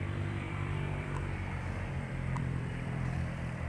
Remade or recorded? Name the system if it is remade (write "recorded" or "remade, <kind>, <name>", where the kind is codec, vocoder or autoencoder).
remade, vocoder, BigVGAN v2